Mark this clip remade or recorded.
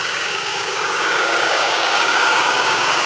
remade